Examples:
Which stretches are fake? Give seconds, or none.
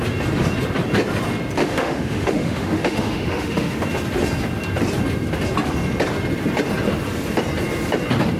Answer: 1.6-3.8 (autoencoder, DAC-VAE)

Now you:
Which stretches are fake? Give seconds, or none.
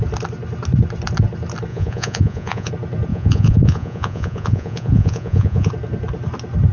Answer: 1.7-2.7 (vocoder, Vocos); 3.1-5.7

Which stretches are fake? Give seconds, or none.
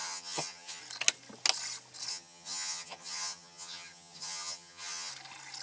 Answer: 0.0-0.8 (vocoder, HiFi-GAN); 2.1-5.1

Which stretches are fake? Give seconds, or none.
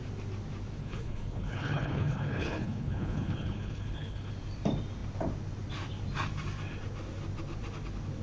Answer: 0.8-4.3 (codec, HILCodec)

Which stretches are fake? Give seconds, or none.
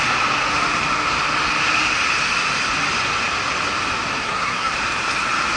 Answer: 4.2-4.7 (codec, SNAC)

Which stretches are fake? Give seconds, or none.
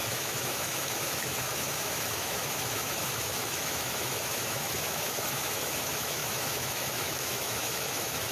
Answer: 0.0-8.3 (autoencoder, DAC-VAE)